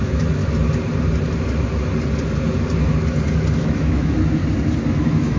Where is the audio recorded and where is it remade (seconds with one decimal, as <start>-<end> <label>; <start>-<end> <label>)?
0.0-0.4 remade; 0.4-3.6 recorded; 3.6-4.4 remade; 4.4-5.0 recorded; 5.0-5.4 remade